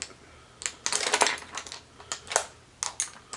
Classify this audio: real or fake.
real